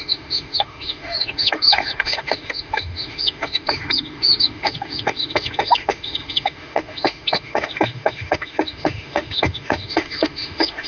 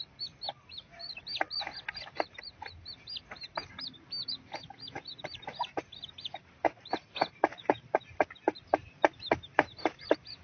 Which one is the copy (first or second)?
first